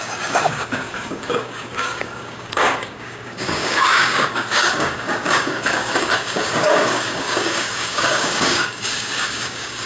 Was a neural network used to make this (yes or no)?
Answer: yes